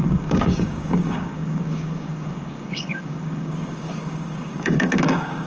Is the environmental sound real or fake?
fake